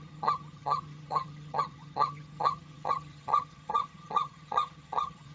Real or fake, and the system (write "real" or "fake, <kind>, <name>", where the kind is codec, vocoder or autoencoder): fake, vocoder, HiFi-GAN